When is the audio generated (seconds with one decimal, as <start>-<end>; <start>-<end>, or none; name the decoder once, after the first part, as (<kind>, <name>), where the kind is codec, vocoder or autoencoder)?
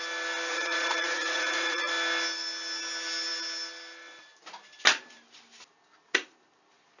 0.5-1.9 (vocoder, Vocos)